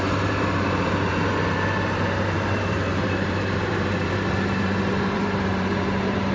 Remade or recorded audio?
remade